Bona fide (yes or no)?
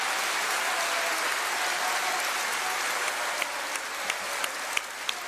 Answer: yes